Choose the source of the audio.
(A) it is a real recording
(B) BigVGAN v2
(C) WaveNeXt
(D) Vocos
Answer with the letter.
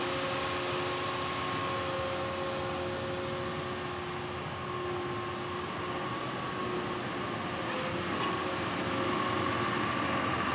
A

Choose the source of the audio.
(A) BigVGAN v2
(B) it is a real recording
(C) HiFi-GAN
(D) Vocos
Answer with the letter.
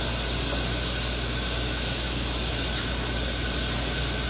B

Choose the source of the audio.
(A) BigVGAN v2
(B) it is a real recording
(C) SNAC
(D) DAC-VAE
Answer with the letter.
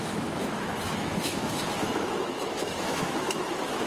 D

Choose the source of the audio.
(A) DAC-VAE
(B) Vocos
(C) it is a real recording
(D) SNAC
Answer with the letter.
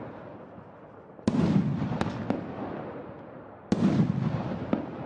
C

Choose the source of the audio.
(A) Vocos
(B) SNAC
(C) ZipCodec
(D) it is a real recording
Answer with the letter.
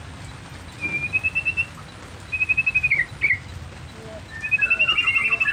D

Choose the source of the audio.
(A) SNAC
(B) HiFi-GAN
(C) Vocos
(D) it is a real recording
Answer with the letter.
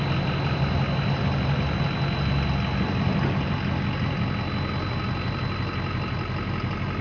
D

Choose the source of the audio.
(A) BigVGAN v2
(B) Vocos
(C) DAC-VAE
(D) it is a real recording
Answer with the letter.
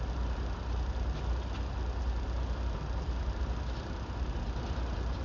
D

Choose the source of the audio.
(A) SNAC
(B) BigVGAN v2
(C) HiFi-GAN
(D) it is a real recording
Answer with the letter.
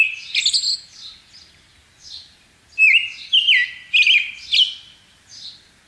D